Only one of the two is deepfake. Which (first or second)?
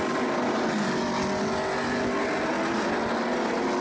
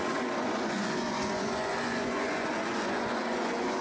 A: second